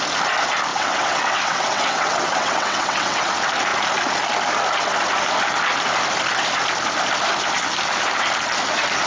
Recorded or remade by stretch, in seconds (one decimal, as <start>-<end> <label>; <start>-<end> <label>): 0.0-0.7 recorded; 0.7-3.3 remade; 3.3-9.1 recorded